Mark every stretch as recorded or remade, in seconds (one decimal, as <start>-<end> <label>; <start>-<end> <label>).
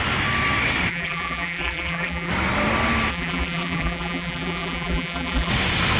0.0-0.9 recorded; 0.9-2.3 remade; 2.3-3.1 recorded; 3.1-5.5 remade; 5.5-6.0 recorded